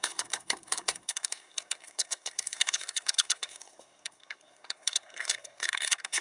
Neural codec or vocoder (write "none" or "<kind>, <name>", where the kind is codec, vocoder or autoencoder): codec, SNAC